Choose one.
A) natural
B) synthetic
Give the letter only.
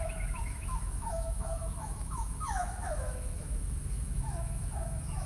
B